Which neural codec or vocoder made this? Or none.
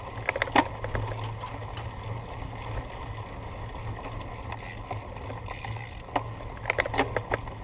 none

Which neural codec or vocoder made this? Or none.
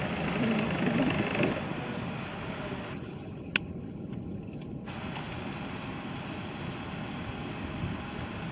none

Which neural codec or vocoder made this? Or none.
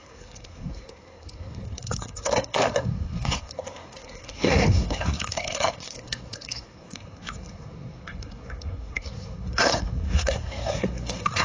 codec, SNAC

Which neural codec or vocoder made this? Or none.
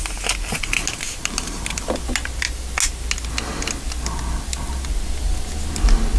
none